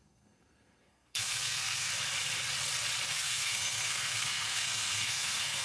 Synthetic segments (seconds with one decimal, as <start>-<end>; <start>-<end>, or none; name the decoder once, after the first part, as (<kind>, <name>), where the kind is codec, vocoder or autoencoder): 0.0-1.9 (codec, SNAC); 3.1-5.6